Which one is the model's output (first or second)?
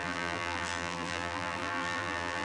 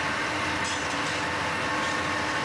first